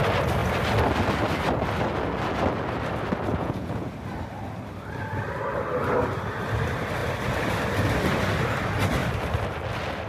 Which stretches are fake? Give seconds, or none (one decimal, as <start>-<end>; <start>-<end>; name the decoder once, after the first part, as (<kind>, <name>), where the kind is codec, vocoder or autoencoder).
3.3-3.9 (vocoder, Vocos)